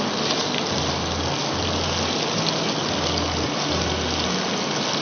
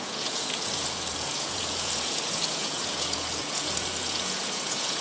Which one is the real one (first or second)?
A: first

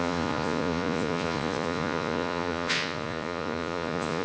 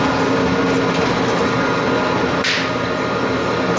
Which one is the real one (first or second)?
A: second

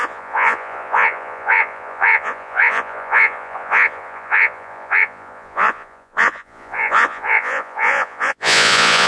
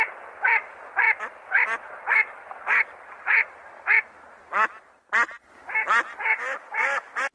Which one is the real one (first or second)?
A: second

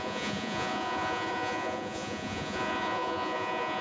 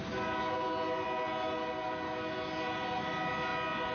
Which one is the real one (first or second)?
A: second